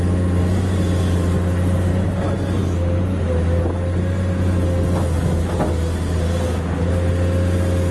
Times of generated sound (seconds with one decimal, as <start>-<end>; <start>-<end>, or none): none